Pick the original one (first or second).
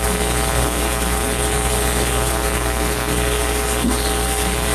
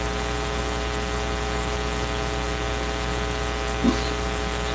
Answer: second